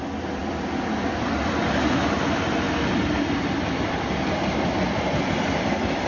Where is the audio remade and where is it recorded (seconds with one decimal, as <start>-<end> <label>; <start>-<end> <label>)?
0.0-6.1 recorded